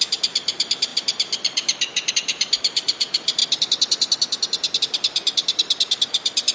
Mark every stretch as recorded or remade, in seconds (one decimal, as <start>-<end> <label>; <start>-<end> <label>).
0.0-3.4 remade; 3.4-4.8 recorded; 4.8-6.5 remade